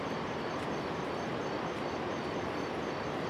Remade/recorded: remade